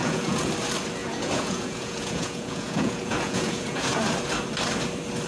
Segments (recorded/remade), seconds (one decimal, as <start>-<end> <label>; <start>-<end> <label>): 0.0-0.5 remade; 0.5-1.0 recorded; 1.0-4.0 remade; 4.0-5.3 recorded